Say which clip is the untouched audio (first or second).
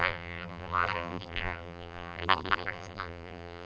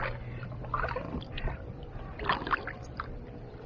second